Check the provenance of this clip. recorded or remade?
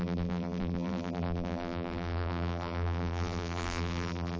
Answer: remade